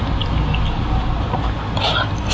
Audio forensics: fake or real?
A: real